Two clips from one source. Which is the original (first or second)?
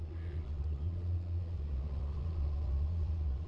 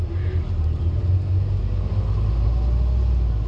second